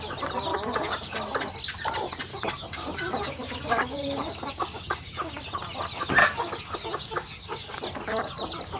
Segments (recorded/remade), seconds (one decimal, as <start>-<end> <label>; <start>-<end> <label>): 0.0-0.5 recorded; 0.5-1.2 remade; 1.2-2.3 recorded; 2.3-5.4 remade; 5.4-6.2 recorded; 6.2-7.8 remade; 7.8-8.8 recorded